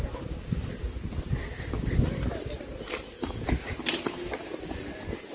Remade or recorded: recorded